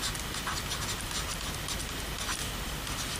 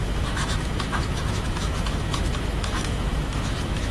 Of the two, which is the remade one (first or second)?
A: second